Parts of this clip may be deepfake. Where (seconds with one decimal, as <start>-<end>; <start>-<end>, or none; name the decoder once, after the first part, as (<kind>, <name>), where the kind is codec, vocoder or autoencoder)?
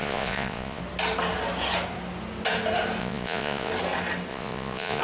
0.0-0.8 (vocoder, Vocos); 3.0-3.7; 4.3-5.0